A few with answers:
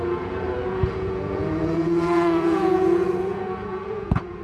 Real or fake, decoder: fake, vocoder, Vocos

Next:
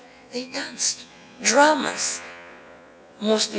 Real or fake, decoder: fake, vocoder, Vocos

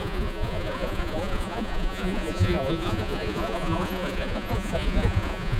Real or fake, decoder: fake, vocoder, Vocos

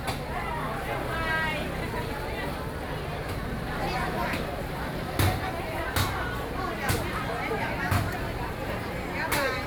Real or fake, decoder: real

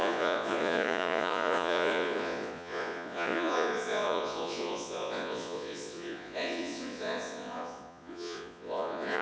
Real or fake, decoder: fake, vocoder, Vocos